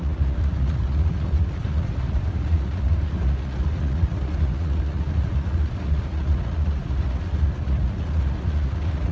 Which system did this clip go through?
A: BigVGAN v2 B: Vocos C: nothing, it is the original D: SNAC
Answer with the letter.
B